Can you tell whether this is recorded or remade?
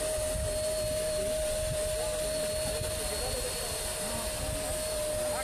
recorded